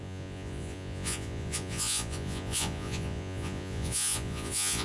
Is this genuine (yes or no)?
no